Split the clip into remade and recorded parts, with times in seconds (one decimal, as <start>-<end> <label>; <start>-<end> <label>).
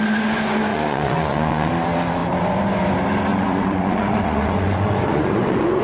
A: 0.0-0.7 recorded; 0.7-1.7 remade; 1.7-3.3 recorded; 3.3-5.8 remade